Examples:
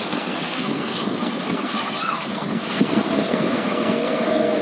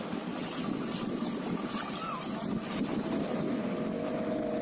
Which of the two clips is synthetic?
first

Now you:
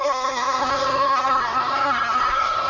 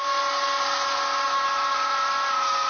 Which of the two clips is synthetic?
first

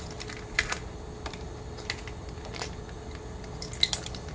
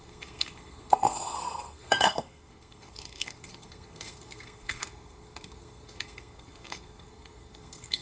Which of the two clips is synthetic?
second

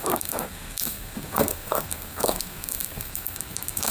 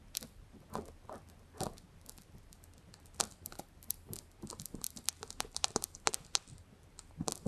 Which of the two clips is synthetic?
first